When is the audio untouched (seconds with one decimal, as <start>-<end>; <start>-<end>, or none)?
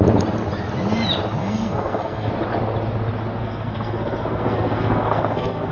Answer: 0.0-1.4; 2.3-3.4